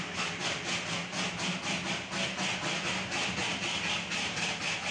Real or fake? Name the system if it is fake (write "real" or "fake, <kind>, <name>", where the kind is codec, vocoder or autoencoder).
real